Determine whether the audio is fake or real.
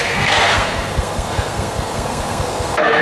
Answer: fake